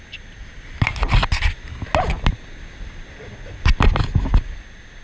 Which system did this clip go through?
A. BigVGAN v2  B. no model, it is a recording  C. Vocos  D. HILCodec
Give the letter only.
B